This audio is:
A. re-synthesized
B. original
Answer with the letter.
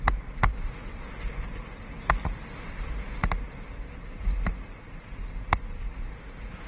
B